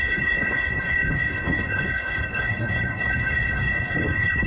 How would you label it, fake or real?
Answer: fake